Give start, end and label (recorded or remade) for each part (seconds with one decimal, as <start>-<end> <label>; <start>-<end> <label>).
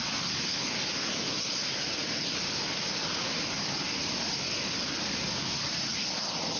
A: 0.0-6.6 recorded